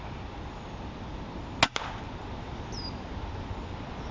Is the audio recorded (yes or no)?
yes